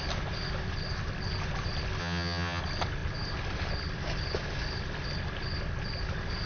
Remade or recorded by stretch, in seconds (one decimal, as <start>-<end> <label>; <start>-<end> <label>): 0.0-2.0 recorded; 2.0-2.6 remade; 2.6-6.5 recorded